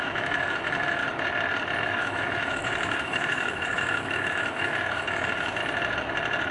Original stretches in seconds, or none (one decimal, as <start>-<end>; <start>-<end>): 1.0-1.8; 5.6-6.5